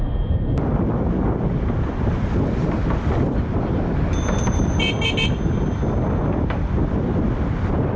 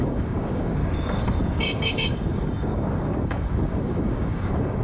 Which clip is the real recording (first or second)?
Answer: first